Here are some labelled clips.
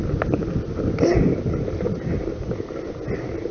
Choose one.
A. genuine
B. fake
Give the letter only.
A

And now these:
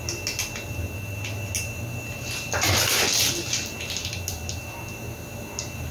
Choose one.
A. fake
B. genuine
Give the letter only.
B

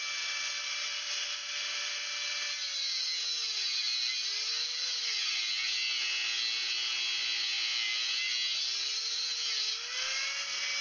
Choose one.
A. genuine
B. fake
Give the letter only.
A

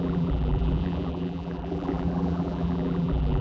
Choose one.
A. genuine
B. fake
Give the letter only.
B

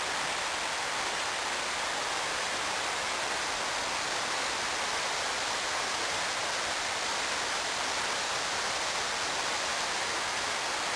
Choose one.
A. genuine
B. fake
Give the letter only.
A